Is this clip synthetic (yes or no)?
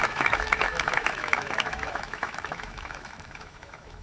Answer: yes